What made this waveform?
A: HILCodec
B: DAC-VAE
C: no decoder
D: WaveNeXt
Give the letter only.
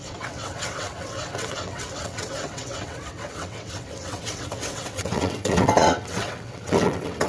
D